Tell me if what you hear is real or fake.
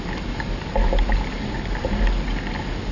real